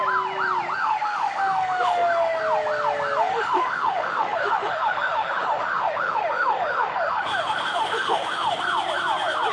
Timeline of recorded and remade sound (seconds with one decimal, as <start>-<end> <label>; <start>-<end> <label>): 0.0-0.8 recorded; 0.8-2.4 remade; 2.4-3.3 recorded; 3.3-8.6 remade; 8.6-9.5 recorded

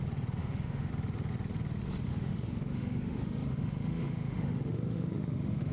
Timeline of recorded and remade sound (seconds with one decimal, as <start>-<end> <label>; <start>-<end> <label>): 0.0-0.4 recorded; 0.4-0.9 remade; 0.9-2.1 recorded; 2.1-5.7 remade

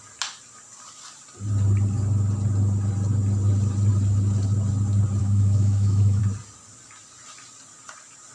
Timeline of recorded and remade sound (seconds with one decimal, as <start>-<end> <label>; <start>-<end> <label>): 0.0-5.2 recorded; 5.2-6.2 remade; 6.2-8.3 recorded

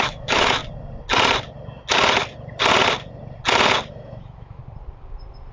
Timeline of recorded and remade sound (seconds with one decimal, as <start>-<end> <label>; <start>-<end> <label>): 0.0-0.6 remade; 0.6-3.9 recorded; 3.9-4.6 remade; 4.6-5.5 recorded

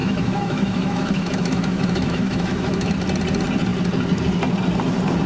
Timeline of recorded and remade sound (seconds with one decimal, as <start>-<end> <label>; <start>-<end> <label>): 0.0-2.9 remade; 2.9-5.3 recorded

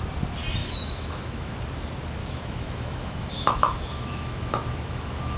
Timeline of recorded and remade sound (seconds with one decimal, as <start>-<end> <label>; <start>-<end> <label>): 0.0-0.6 recorded; 0.6-1.5 remade; 1.5-2.2 recorded; 2.2-5.4 remade

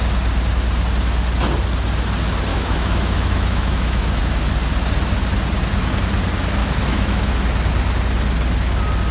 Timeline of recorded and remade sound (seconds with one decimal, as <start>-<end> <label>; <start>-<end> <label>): 0.0-2.5 recorded; 2.5-4.2 remade; 4.2-6.6 recorded; 6.6-7.3 remade; 7.3-9.1 recorded